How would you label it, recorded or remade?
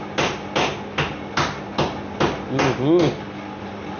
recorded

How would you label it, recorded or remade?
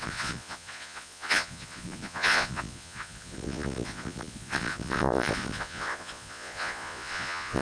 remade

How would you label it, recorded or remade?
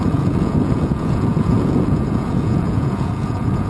remade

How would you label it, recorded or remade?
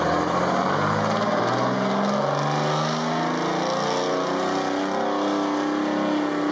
recorded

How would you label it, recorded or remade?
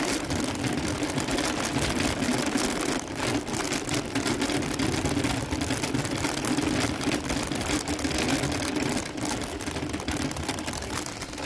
recorded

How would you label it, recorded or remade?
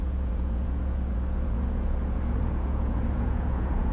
remade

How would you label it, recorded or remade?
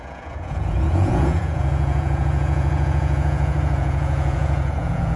remade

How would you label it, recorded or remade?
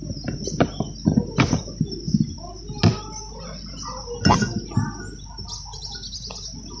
recorded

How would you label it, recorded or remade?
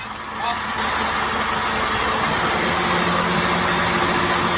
recorded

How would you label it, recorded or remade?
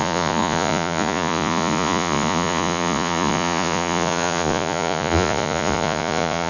remade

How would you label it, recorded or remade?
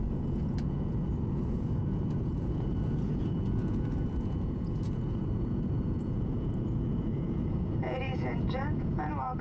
remade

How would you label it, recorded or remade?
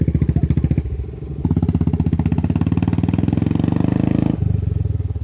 recorded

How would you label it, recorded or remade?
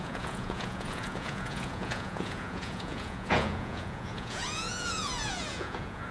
remade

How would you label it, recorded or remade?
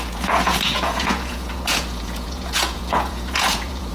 remade